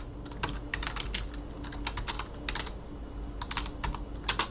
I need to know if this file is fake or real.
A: real